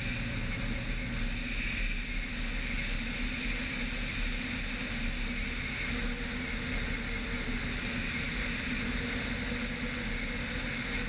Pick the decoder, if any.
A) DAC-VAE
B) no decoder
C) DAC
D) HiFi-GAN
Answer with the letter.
B